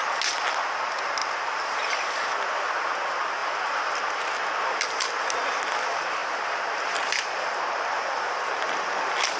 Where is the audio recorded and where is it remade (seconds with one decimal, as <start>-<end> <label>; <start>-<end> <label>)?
0.0-1.2 recorded; 1.2-1.8 remade; 1.8-6.2 recorded; 6.2-7.4 remade; 7.4-9.4 recorded